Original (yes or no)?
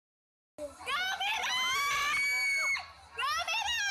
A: yes